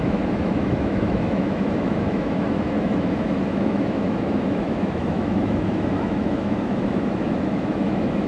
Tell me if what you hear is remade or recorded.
remade